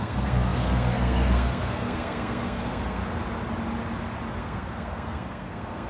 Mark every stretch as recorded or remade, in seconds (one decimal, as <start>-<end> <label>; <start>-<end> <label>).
0.0-3.0 remade; 3.0-4.4 recorded; 4.4-5.9 remade